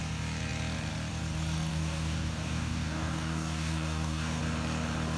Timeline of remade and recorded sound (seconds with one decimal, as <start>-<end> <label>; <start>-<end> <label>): 0.0-1.7 recorded; 1.7-4.4 remade; 4.4-5.2 recorded